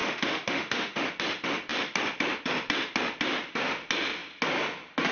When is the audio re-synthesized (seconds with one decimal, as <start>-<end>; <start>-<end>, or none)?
0.0-1.0